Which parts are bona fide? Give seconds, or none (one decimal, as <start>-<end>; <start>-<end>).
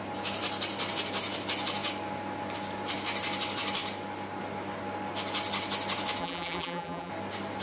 0.0-6.2; 7.1-7.6